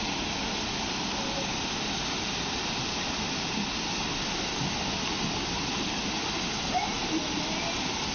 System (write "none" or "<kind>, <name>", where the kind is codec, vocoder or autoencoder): none